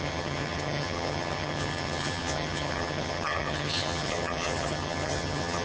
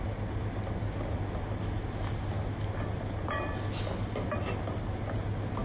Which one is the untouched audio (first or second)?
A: second